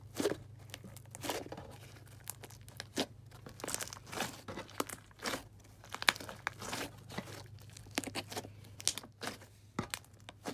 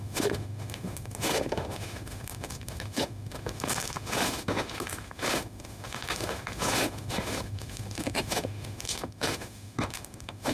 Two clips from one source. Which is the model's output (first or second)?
second